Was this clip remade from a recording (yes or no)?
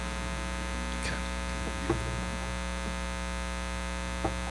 no